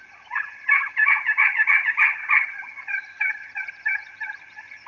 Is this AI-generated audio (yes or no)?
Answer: yes